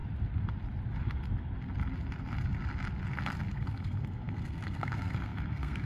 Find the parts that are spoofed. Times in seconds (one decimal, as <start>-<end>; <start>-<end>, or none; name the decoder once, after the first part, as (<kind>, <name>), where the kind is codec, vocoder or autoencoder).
3.5-5.9 (codec, SNAC)

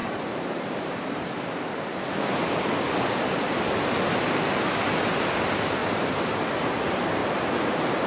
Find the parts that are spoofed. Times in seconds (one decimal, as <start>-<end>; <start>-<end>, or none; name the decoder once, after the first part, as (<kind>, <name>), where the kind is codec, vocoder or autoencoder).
0.0-2.0 (vocoder, BigVGAN v2); 5.8-6.8; 7.2-8.1

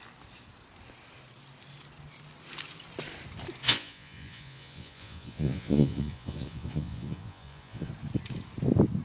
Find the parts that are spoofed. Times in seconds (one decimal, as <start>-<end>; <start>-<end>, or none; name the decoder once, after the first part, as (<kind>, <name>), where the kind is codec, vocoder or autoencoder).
3.6-7.9 (vocoder, Vocos)

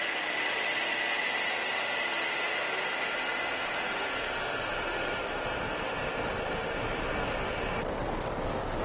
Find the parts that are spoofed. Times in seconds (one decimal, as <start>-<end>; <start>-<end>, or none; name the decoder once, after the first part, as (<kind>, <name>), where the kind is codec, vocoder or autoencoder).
none

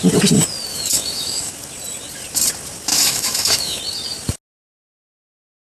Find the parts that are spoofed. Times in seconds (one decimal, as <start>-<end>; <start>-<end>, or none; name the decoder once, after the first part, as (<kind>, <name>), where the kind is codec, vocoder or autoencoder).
0.7-1.5 (autoencoder, DAC-VAE); 2.9-3.8

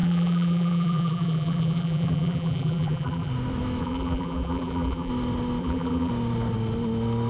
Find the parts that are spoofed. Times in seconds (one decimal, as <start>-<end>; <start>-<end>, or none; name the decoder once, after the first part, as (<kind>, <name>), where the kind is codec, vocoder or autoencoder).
0.0-3.3 (vocoder, BigVGAN v2); 3.8-5.1; 5.6-6.1

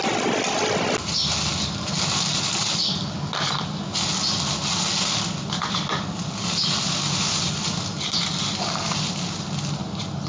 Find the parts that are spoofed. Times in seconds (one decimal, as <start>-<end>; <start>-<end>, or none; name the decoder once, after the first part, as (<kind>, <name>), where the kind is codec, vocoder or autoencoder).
1.5-2.9 (vocoder, BigVGAN v2)